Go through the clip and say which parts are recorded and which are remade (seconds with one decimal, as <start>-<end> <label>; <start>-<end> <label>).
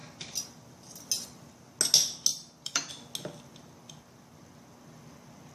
0.0-2.3 recorded; 2.3-2.9 remade; 2.9-5.5 recorded